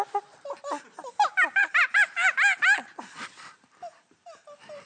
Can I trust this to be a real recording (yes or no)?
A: yes